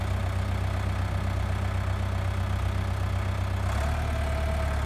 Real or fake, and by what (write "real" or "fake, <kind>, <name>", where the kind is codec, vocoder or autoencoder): real